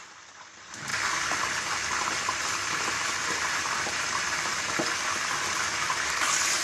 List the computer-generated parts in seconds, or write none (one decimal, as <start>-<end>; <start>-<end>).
none